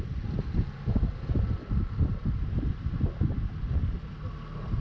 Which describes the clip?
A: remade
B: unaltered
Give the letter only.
B